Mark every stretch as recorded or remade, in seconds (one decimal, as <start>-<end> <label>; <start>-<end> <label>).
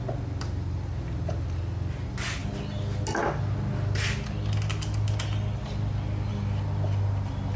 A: 0.0-7.6 recorded